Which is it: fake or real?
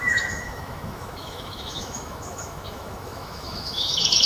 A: fake